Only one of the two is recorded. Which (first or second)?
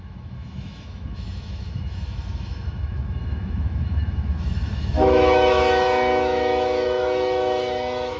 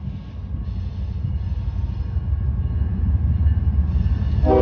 second